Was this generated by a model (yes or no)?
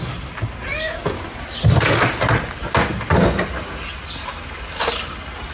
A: no